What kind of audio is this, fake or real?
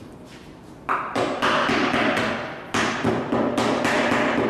real